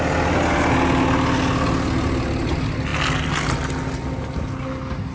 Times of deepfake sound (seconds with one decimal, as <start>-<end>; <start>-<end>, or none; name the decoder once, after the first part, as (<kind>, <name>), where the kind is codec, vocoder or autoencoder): none